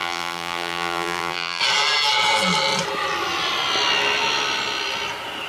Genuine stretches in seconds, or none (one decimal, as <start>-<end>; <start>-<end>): 1.6-5.5